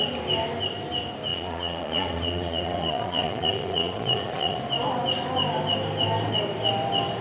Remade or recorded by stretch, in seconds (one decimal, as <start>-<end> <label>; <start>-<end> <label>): 0.0-1.3 recorded; 1.3-4.6 remade; 4.6-7.2 recorded